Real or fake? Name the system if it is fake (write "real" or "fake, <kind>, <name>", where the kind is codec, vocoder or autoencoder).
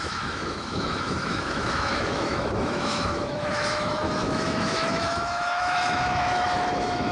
fake, autoencoder, DAC-VAE